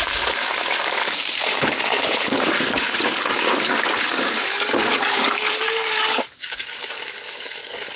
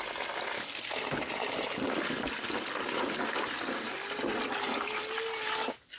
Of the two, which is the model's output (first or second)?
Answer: first